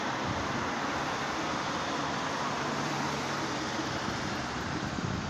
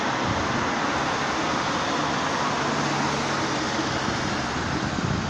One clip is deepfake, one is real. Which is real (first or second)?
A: second